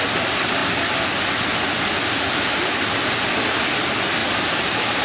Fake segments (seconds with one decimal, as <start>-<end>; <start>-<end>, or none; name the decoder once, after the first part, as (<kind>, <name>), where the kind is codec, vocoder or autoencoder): 4.2-5.0 (vocoder, BigVGAN v2)